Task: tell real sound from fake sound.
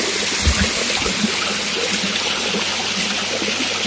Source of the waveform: real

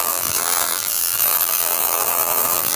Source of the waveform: fake